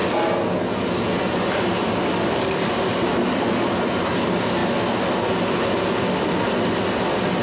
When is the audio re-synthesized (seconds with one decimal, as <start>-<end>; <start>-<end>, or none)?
none